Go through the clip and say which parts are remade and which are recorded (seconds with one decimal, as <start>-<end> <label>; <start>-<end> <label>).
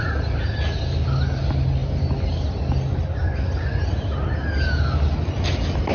0.0-5.9 recorded